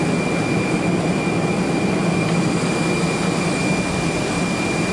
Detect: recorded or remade recorded